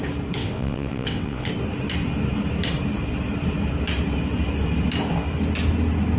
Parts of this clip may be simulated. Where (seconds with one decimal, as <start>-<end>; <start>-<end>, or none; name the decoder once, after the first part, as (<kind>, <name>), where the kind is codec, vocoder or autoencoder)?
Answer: 0.4-1.5 (vocoder, WaveNeXt)